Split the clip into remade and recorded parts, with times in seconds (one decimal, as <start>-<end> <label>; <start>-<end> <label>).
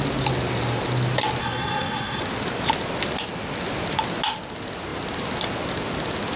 0.0-1.4 recorded; 1.4-2.2 remade; 2.2-6.4 recorded